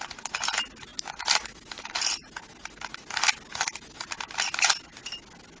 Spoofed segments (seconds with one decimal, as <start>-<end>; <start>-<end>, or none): none